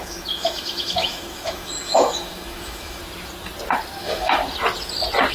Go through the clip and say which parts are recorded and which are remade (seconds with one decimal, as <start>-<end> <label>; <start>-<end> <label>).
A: 0.0-3.0 remade; 3.0-4.0 recorded; 4.0-4.4 remade; 4.4-5.3 recorded